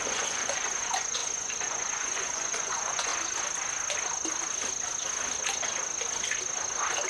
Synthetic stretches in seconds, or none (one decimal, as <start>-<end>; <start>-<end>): 0.0-3.1